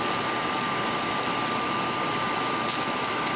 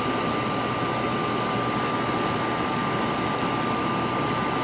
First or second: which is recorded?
second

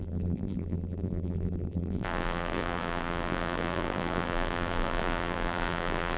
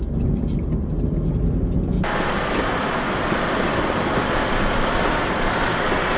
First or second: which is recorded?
second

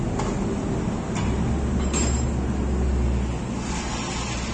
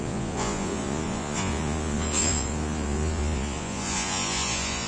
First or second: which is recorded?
first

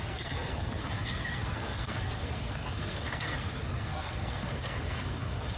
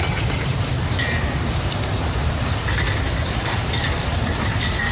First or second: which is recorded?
second